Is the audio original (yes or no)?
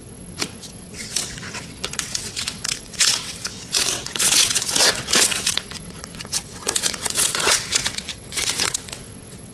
no